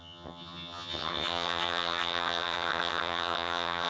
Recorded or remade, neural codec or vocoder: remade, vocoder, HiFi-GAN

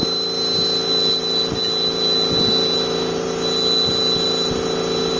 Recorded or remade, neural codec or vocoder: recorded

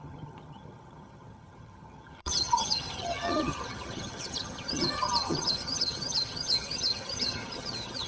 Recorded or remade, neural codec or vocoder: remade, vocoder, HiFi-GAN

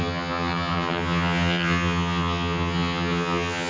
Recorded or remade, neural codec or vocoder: remade, vocoder, HiFi-GAN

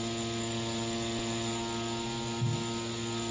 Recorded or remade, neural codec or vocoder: recorded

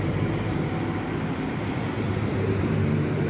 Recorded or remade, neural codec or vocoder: recorded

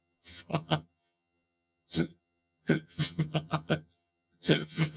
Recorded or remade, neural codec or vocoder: remade, vocoder, HiFi-GAN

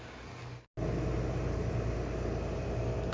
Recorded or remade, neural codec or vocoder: recorded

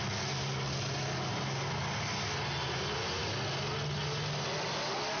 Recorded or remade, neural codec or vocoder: recorded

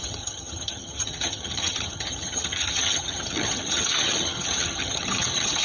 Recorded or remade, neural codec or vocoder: remade, vocoder, HiFi-GAN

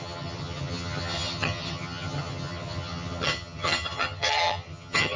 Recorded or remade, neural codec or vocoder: remade, vocoder, HiFi-GAN